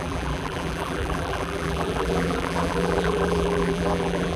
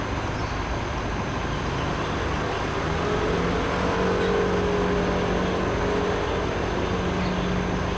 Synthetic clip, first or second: first